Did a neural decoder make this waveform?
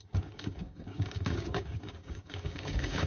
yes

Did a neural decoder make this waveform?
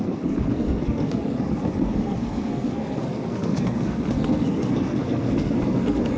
yes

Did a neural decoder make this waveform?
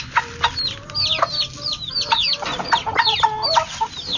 no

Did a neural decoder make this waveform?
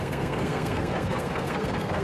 yes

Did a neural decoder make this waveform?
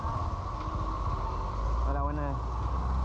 no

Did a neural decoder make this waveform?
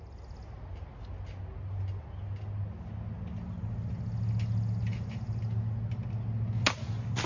no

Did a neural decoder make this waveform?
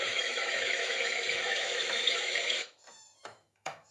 yes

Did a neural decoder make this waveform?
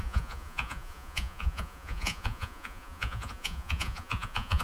yes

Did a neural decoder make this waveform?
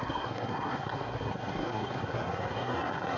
yes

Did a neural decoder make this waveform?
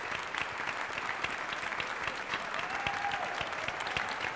no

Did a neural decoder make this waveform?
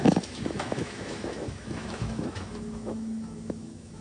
yes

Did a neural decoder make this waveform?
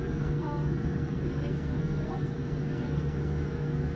yes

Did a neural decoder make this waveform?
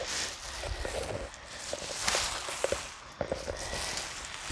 no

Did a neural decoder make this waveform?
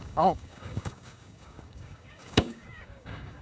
yes